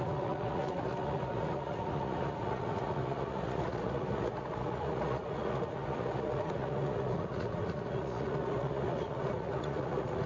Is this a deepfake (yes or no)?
yes